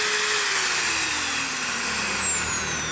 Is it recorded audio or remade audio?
recorded